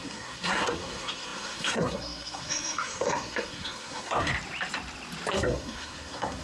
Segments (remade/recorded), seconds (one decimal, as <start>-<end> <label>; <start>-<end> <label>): 0.0-4.3 remade; 4.3-5.3 recorded; 5.3-6.4 remade